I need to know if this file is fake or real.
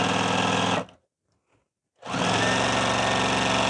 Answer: real